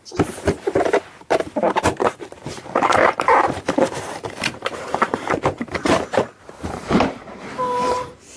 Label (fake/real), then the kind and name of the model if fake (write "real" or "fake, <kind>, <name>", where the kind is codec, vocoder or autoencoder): fake, vocoder, BigVGAN v2